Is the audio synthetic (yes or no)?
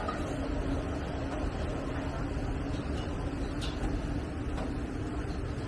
no